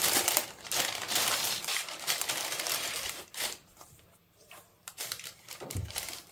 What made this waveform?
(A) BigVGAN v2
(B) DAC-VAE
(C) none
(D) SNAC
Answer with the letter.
A